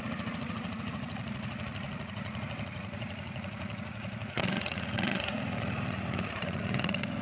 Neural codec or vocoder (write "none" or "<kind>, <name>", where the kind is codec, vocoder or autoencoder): vocoder, Vocos